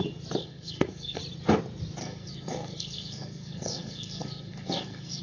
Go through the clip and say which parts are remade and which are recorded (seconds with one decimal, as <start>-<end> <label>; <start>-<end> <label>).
0.0-0.4 recorded; 0.4-1.2 remade; 1.2-2.0 recorded; 2.0-5.2 remade